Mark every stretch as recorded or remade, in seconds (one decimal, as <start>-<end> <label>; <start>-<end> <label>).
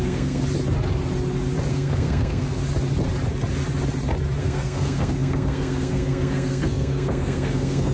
0.0-0.4 remade; 0.4-1.7 recorded; 1.7-2.6 remade; 2.6-4.4 recorded; 4.4-7.9 remade